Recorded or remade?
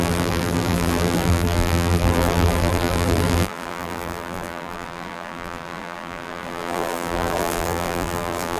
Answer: remade